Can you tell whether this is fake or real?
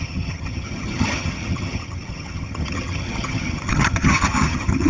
fake